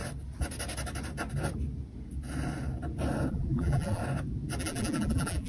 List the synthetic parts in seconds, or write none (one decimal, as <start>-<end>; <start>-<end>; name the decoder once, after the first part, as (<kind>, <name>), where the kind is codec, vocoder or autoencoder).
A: 3.3-4.0 (vocoder, BigVGAN v2); 4.6-5.5